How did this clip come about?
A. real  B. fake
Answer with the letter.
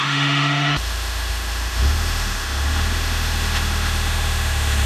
B